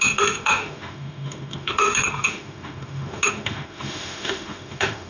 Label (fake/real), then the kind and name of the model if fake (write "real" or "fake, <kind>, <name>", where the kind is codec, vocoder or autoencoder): fake, autoencoder, DAC-VAE